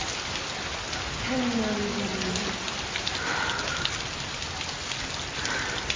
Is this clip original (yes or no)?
yes